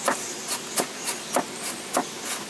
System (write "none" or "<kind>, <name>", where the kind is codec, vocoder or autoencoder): none